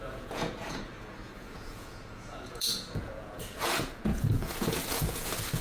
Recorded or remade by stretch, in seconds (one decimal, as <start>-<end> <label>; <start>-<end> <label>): 0.0-5.6 remade